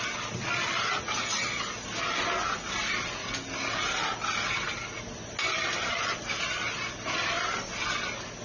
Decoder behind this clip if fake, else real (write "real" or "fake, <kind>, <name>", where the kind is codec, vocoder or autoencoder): real